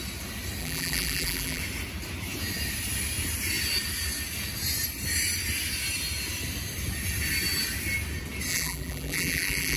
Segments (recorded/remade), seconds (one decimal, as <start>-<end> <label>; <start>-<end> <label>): 0.0-0.6 recorded; 0.6-1.6 remade; 1.6-8.5 recorded; 8.5-9.8 remade